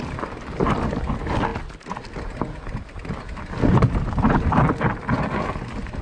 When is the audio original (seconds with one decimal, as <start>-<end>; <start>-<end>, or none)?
0.0-6.0